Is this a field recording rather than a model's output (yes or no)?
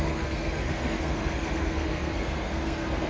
no